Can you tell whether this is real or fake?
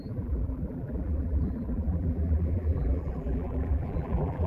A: fake